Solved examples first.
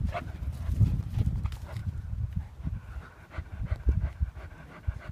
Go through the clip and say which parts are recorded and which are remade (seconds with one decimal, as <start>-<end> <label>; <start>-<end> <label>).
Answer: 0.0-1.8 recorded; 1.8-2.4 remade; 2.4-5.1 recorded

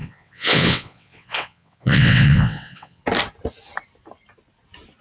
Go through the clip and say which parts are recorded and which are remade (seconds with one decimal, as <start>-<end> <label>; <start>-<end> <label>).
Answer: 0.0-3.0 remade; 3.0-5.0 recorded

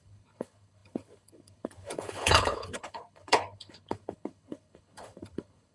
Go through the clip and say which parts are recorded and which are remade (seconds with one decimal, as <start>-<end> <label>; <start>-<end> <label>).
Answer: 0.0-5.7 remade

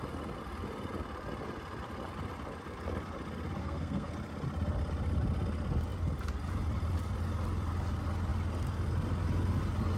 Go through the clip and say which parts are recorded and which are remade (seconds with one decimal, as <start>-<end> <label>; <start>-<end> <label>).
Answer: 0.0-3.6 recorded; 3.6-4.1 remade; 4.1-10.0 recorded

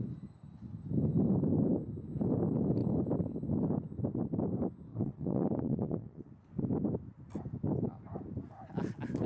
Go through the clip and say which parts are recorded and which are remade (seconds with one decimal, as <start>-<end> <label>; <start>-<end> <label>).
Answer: 0.0-4.9 recorded; 4.9-6.3 remade; 6.3-9.3 recorded

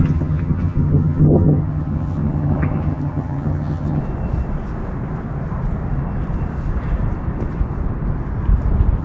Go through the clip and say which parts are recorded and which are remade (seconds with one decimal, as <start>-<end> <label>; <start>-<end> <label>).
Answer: 0.0-4.0 remade; 4.0-9.0 recorded